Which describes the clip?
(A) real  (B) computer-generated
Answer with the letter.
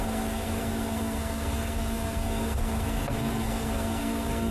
B